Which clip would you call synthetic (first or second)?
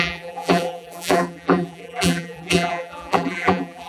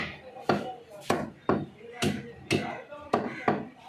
first